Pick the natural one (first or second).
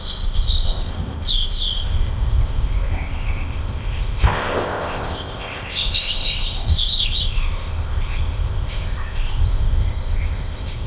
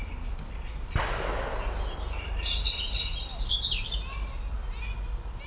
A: second